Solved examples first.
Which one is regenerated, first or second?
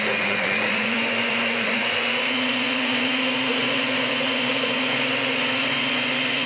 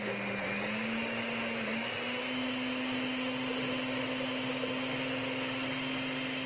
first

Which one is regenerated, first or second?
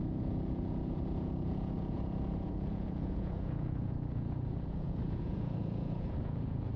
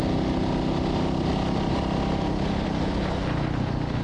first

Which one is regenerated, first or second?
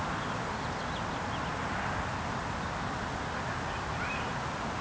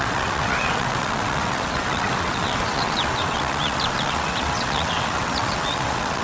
second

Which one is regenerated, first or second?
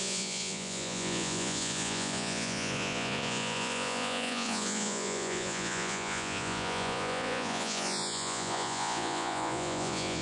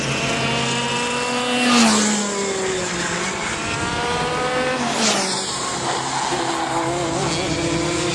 first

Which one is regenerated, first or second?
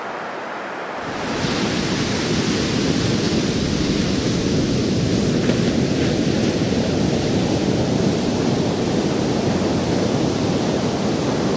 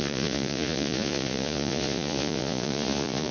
second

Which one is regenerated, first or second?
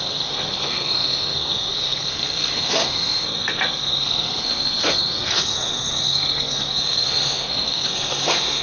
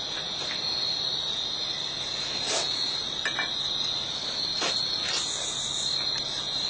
first